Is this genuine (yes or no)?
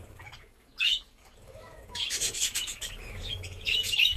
no